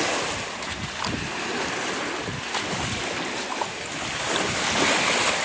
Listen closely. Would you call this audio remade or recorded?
recorded